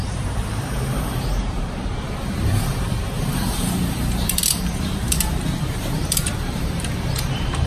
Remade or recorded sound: remade